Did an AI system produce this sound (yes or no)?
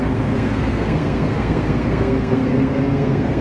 yes